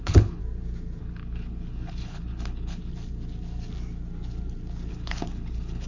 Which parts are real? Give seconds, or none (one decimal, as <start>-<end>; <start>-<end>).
0.4-1.0; 2.9-4.9